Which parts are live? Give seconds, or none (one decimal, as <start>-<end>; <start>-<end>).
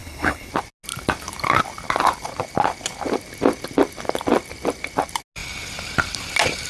0.5-6.7